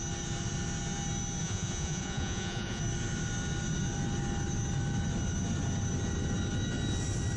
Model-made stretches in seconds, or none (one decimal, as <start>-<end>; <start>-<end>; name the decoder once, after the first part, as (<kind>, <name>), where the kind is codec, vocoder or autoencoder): 1.4-2.8 (vocoder, Vocos)